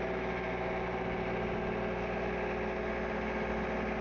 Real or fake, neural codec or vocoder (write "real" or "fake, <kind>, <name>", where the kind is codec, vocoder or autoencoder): real